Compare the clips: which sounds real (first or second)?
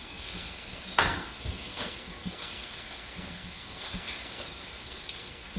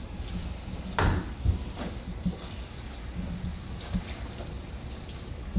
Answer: second